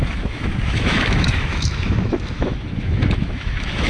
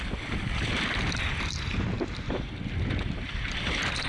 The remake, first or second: first